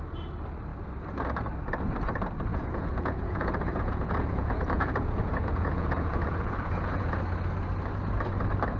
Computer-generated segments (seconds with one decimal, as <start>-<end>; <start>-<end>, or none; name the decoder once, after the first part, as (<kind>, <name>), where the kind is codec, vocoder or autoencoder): 2.5-7.2 (vocoder, Vocos)